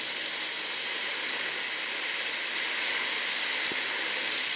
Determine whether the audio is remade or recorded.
recorded